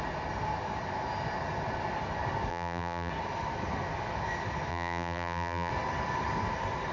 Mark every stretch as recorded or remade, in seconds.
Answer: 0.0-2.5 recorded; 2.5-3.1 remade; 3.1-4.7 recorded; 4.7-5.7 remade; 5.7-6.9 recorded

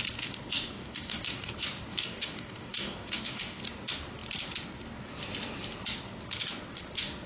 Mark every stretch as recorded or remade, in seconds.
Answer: 0.0-0.8 recorded; 0.8-1.5 remade; 1.5-1.9 recorded; 1.9-3.6 remade; 3.6-7.3 recorded

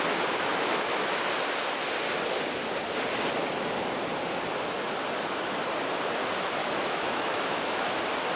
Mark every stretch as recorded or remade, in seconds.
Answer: 0.0-0.5 recorded; 0.5-1.1 remade; 1.1-6.6 recorded; 6.6-8.0 remade; 8.0-8.4 recorded

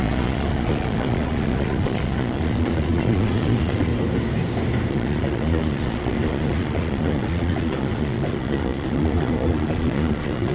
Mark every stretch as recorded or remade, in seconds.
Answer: 0.0-3.9 remade; 3.9-4.9 recorded; 4.9-10.5 remade

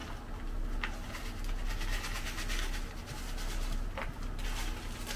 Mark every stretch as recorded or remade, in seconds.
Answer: 0.0-5.2 recorded

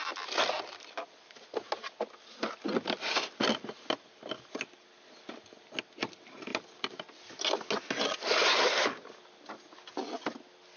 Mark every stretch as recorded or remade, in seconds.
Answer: 0.0-10.8 recorded